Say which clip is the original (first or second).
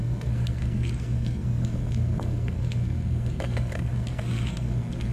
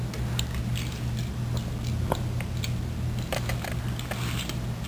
second